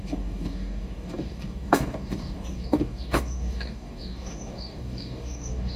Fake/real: fake